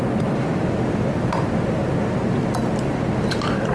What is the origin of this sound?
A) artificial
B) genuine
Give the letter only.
B